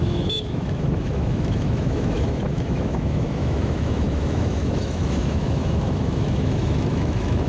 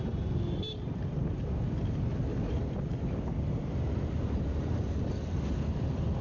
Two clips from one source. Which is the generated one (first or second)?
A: first